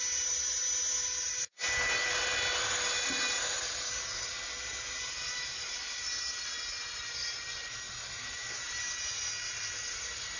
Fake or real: real